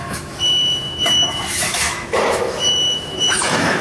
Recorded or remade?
remade